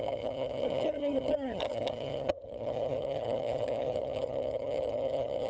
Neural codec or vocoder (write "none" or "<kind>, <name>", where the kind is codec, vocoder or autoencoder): vocoder, HiFi-GAN